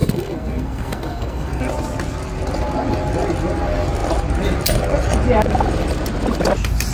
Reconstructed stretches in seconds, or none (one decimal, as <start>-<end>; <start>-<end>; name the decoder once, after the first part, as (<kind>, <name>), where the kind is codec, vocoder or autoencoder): 0.0-1.6 (codec, SNAC)